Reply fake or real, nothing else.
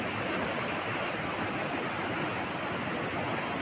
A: real